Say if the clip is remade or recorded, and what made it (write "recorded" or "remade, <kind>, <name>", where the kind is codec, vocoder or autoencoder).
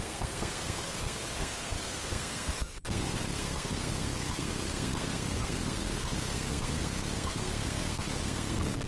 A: remade, codec, SNAC